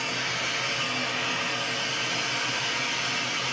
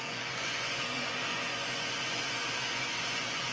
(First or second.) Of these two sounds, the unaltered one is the first